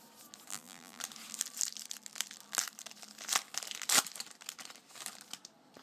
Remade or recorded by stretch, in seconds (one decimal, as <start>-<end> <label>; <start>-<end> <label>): 0.0-0.5 recorded; 0.5-1.0 remade; 1.0-5.8 recorded